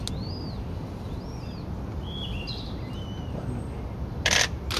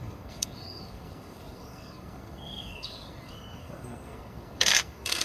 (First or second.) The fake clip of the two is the second